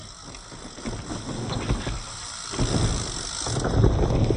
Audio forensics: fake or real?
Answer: real